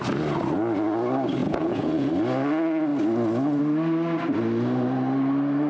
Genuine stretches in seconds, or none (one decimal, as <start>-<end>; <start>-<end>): 0.0-1.4; 2.1-5.7